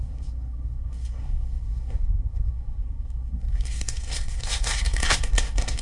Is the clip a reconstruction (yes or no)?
yes